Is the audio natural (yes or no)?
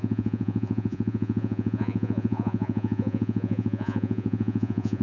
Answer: no